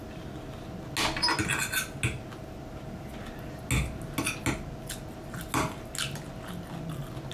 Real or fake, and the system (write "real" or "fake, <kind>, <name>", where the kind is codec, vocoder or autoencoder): real